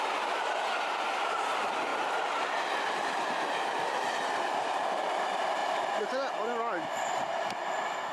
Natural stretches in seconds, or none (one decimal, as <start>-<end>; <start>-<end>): 0.0-8.1